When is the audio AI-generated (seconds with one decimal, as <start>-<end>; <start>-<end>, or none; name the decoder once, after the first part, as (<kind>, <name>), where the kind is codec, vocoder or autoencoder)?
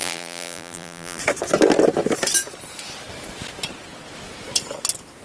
0.0-1.2 (vocoder, BigVGAN v2)